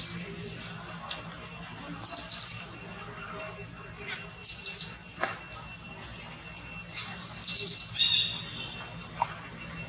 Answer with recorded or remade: recorded